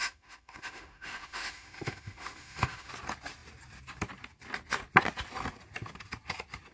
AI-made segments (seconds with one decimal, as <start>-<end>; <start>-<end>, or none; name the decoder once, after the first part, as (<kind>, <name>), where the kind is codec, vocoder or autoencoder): 0.0-2.9 (autoencoder, DAC-VAE)